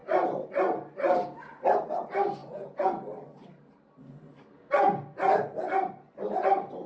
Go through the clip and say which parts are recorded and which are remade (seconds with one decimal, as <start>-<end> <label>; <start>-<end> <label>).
0.0-2.4 recorded; 2.4-2.9 remade; 2.9-6.9 recorded